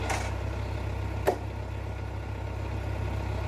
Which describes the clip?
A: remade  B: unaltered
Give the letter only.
B